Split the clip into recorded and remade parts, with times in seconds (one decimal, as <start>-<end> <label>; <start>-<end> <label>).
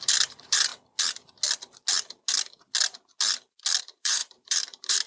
0.0-0.7 remade; 0.7-3.8 recorded; 3.8-5.1 remade